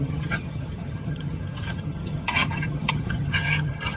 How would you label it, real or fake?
fake